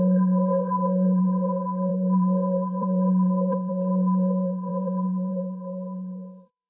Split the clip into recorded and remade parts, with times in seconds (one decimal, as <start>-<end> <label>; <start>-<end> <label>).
0.0-6.7 remade